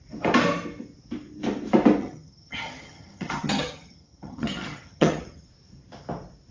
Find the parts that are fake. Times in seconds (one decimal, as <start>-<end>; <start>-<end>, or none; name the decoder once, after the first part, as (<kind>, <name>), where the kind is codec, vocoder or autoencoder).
2.0-5.5 (vocoder, HiFi-GAN)

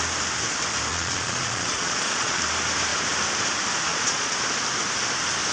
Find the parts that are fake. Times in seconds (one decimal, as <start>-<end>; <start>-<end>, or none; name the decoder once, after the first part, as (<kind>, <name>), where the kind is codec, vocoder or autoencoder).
0.9-2.4 (vocoder, Vocos); 3.9-4.4

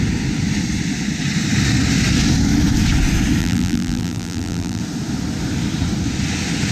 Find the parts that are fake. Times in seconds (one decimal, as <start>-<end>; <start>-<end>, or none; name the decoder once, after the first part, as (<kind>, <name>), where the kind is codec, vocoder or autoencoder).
3.4-4.8 (vocoder, BigVGAN v2)

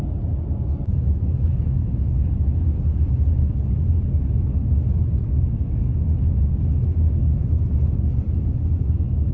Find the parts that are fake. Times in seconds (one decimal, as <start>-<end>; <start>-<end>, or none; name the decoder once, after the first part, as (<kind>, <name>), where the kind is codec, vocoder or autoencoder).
1.0-2.2 (autoencoder, DAC-VAE)

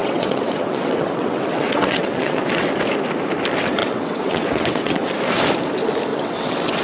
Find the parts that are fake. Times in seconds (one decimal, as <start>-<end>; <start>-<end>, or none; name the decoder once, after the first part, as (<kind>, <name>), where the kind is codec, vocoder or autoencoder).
0.0-2.6 (vocoder, WaveNeXt); 3.8-5.1; 6.1-6.8